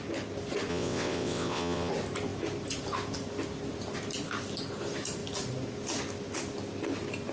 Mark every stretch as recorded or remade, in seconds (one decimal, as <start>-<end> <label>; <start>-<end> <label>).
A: 0.0-0.7 recorded; 0.7-1.9 remade; 1.9-7.3 recorded